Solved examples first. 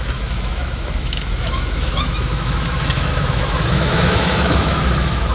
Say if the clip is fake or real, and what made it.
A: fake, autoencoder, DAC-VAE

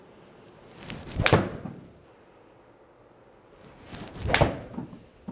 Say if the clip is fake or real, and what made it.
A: real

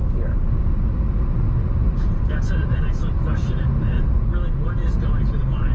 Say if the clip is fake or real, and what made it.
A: real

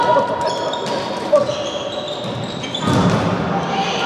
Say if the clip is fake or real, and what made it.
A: real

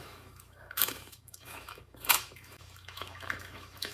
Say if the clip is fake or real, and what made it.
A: fake, autoencoder, DAC-VAE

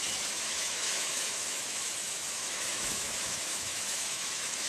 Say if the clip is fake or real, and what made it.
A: fake, autoencoder, DAC-VAE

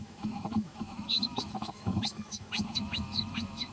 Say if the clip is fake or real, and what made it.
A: fake, autoencoder, DAC-VAE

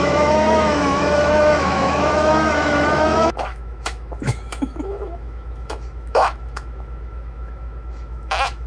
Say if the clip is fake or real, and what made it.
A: fake, autoencoder, DAC-VAE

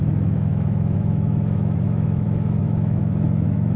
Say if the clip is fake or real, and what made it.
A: fake, autoencoder, DAC-VAE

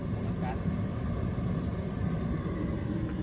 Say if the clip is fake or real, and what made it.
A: real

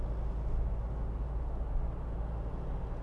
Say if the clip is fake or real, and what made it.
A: real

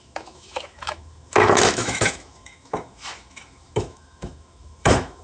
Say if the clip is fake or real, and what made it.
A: fake, autoencoder, DAC-VAE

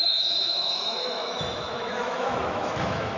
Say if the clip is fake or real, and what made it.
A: fake, autoencoder, DAC-VAE